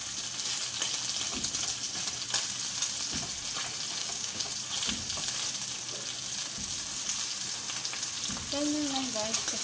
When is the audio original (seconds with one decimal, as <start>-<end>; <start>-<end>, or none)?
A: 0.0-4.0; 4.5-9.6